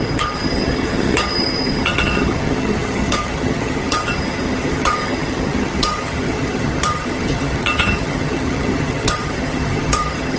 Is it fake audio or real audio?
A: fake